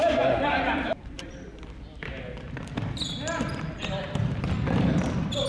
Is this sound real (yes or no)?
no